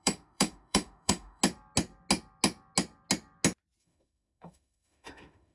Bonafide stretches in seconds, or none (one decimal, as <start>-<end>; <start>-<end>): 1.4-3.8